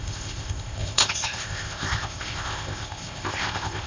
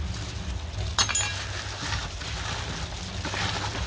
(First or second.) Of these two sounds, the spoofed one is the first